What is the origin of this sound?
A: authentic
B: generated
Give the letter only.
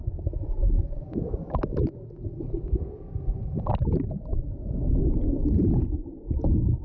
A